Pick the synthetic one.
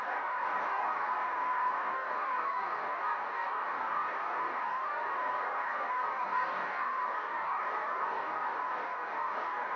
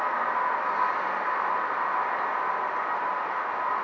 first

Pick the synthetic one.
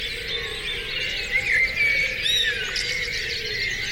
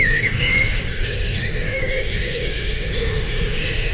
second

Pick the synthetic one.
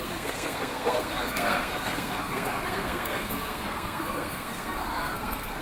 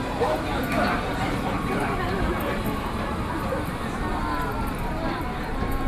first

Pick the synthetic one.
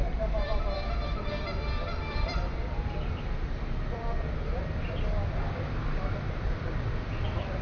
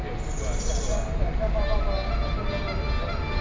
first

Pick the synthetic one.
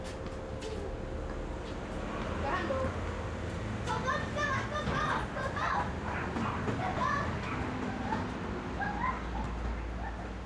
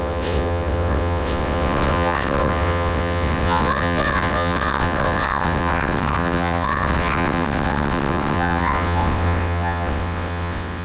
second